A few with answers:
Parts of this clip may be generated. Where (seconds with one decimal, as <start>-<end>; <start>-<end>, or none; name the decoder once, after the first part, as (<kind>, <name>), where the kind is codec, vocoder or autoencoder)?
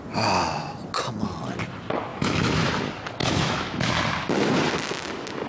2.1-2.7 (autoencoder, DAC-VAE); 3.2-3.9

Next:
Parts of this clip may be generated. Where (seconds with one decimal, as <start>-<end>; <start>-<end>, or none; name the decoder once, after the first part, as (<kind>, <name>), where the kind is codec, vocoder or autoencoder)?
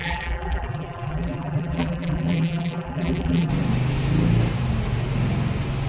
0.0-3.5 (vocoder, BigVGAN v2)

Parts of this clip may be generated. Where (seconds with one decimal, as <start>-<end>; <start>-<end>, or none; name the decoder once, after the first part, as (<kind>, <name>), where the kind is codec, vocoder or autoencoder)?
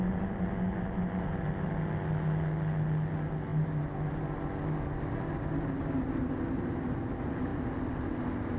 none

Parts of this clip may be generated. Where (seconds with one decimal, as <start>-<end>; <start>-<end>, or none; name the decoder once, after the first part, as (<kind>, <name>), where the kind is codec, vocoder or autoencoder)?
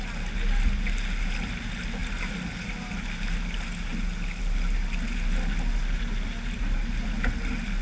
none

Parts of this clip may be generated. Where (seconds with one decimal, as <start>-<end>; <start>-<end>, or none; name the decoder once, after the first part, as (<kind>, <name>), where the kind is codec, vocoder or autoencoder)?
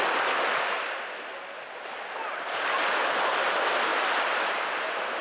3.9-4.8 (vocoder, BigVGAN v2)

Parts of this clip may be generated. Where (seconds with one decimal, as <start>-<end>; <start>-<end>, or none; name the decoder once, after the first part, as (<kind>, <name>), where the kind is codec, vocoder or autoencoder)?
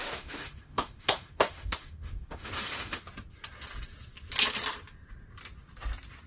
0.0-3.0 (autoencoder, DAC-VAE)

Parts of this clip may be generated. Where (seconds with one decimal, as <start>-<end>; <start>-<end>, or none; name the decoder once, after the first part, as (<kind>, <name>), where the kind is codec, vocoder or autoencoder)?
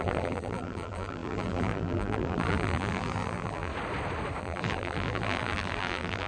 0.0-3.7 (vocoder, BigVGAN v2); 4.4-6.3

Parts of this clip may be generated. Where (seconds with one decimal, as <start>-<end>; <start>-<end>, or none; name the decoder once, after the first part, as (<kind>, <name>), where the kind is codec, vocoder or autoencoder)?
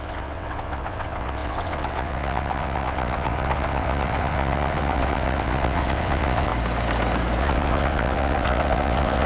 0.0-6.5 (vocoder, WaveNeXt); 7.4-9.3